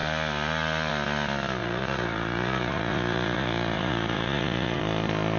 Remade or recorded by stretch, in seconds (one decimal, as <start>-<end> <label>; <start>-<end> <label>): 0.0-1.6 recorded; 1.6-4.8 remade; 4.8-5.4 recorded